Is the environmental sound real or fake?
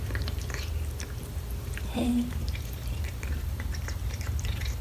fake